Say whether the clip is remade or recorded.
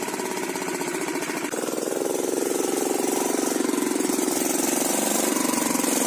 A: remade